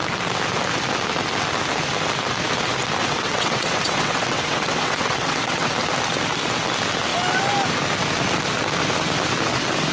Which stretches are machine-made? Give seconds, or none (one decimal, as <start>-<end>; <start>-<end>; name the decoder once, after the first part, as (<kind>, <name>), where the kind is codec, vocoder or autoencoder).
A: 3.0-5.7 (vocoder, WaveNeXt)

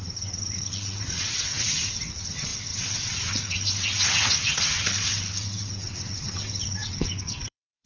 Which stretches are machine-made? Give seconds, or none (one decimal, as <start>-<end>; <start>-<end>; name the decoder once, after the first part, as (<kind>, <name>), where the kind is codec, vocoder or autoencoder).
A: 0.0-7.9 (vocoder, WaveNeXt)

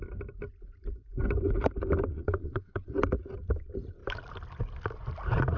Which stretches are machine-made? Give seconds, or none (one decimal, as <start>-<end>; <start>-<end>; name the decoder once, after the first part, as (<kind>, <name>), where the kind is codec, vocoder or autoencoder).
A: 2.1-2.9 (vocoder, WaveNeXt)

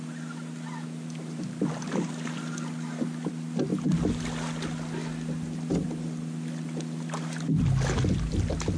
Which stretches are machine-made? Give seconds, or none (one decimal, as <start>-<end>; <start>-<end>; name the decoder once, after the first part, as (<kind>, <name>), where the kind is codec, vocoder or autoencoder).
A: none

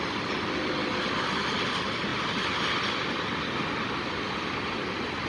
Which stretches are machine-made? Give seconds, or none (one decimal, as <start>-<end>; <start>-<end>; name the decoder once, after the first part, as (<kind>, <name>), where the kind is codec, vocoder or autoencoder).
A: none